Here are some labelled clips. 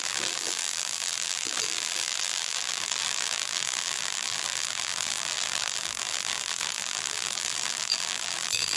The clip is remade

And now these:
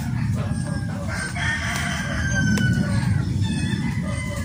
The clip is remade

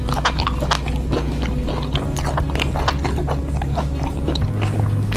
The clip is recorded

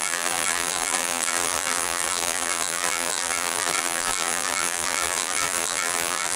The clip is remade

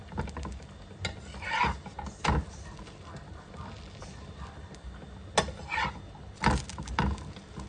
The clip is recorded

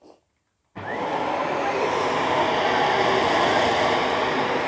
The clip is recorded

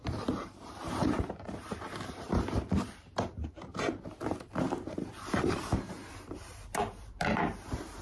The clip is remade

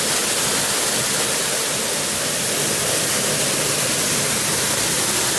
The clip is remade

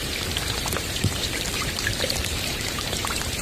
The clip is remade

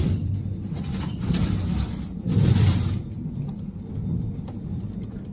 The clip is remade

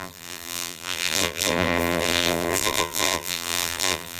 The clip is remade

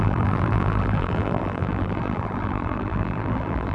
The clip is remade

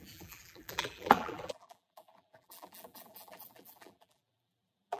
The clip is remade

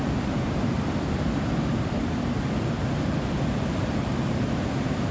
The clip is recorded